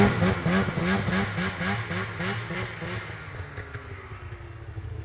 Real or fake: real